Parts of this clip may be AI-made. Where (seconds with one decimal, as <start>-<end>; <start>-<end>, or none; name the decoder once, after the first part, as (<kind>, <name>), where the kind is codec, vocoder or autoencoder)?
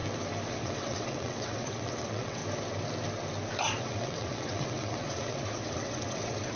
0.5-2.4 (vocoder, WaveNeXt); 3.8-6.6